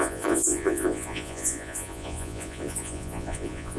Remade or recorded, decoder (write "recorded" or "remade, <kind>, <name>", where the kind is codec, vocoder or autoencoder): remade, vocoder, Vocos